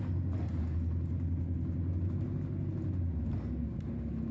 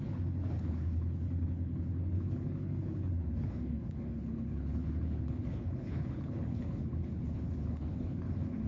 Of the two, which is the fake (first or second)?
second